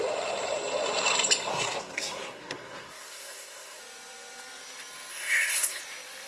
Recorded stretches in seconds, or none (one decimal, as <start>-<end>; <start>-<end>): 0.0-1.5; 3.8-5.1; 5.8-6.3